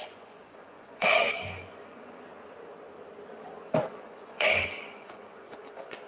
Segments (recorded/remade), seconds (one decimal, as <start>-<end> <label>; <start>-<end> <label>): 0.0-2.3 remade; 2.3-3.9 recorded; 3.9-6.1 remade